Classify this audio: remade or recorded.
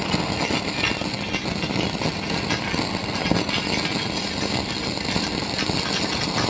recorded